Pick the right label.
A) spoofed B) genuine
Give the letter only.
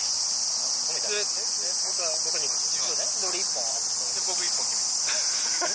B